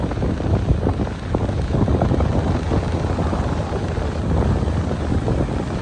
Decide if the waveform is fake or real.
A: real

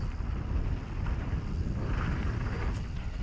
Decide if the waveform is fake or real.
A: fake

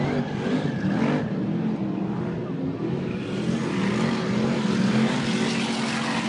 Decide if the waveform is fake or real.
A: real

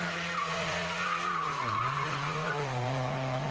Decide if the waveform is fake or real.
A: fake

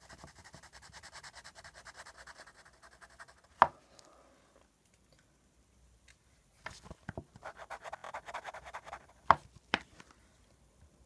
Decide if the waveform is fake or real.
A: real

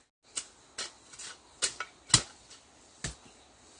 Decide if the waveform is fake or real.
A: real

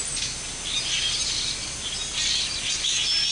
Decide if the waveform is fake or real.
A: real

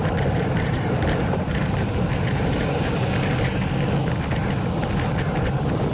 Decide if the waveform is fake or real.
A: real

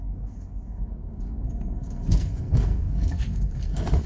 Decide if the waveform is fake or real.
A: fake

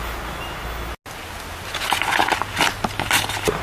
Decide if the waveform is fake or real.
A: real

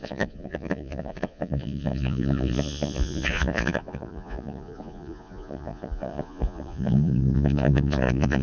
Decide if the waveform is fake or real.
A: fake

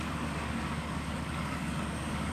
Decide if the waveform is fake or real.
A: fake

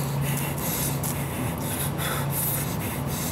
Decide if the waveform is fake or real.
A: real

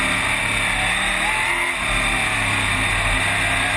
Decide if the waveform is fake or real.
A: real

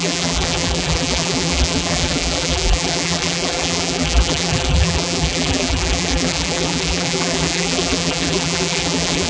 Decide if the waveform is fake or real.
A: fake